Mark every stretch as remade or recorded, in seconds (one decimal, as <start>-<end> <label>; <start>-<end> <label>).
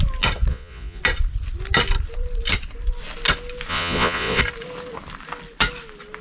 0.0-0.5 recorded; 0.5-1.0 remade; 1.0-3.7 recorded; 3.7-4.4 remade; 4.4-6.2 recorded